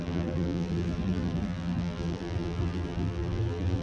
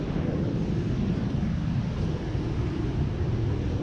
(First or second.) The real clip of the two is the second